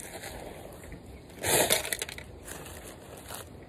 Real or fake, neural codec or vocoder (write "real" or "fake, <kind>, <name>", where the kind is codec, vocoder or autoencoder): real